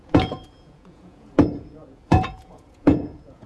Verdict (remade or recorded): remade